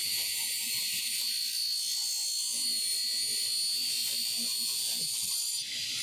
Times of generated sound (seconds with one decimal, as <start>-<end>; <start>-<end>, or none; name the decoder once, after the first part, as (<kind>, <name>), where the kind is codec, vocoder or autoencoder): 0.0-0.5 (autoencoder, DAC-VAE)